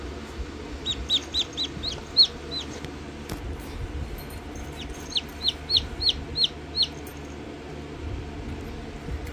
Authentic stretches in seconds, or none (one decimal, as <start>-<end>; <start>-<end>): 0.0-9.3